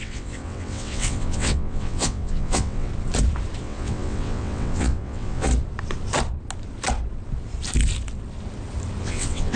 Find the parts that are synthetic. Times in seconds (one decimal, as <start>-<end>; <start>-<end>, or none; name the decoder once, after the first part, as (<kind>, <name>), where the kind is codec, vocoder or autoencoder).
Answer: 0.0-2.9 (vocoder, WaveNeXt); 3.6-5.5; 9.0-9.6

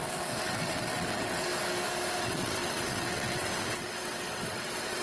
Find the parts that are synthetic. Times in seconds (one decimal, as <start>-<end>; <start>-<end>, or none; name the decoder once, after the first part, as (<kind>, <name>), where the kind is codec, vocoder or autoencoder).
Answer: 0.0-1.5 (vocoder, WaveNeXt); 2.2-5.0

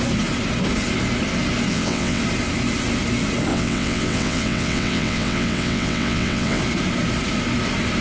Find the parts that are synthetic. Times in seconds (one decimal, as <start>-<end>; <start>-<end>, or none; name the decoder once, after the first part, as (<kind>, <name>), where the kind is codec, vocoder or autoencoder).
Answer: 1.7-2.2 (vocoder, WaveNeXt); 3.5-6.6

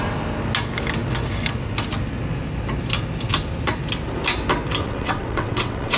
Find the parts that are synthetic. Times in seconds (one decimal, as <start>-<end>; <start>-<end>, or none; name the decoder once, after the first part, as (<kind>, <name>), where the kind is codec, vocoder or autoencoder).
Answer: 4.8-6.0 (vocoder, WaveNeXt)

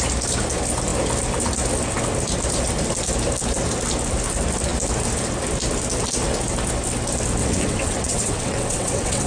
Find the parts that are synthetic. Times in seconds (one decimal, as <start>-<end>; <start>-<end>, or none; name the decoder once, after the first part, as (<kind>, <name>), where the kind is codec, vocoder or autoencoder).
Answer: 7.4-9.3 (vocoder, WaveNeXt)

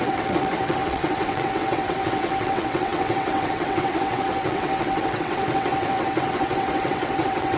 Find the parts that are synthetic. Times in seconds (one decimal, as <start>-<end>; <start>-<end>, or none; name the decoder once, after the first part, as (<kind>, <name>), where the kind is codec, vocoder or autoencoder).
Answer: 0.0-7.6 (vocoder, WaveNeXt)

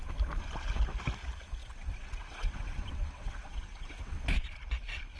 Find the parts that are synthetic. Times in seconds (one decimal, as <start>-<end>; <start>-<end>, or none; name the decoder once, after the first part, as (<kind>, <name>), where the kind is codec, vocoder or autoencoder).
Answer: 1.6-4.2 (vocoder, WaveNeXt)